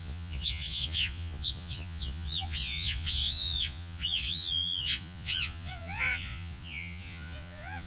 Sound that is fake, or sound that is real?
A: fake